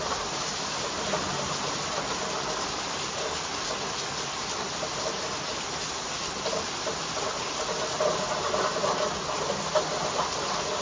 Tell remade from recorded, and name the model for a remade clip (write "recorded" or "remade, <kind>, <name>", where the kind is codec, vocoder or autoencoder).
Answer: recorded